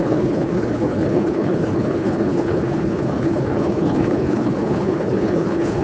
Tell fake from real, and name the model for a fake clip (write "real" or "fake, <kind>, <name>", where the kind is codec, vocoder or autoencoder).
fake, codec, HILCodec